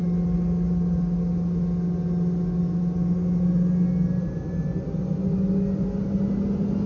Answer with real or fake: real